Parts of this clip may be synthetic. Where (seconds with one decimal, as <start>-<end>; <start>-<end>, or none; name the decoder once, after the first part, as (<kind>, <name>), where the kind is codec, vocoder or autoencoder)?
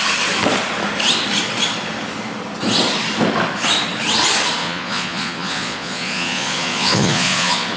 4.6-7.8 (vocoder, Vocos)